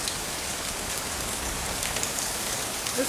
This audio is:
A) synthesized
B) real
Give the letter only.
A